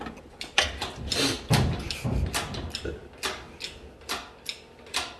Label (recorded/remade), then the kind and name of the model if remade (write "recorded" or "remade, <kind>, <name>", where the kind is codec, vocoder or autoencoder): recorded